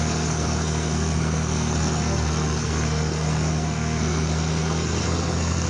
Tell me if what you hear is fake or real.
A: fake